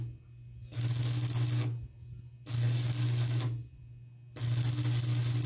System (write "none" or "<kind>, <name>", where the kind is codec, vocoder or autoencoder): none